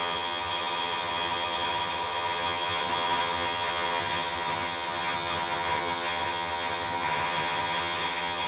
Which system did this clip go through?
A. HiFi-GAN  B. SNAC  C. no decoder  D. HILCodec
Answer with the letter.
A